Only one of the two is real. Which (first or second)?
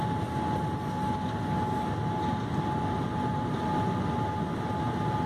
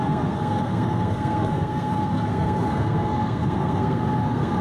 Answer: first